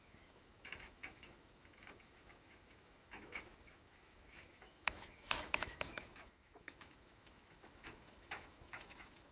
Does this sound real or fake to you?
fake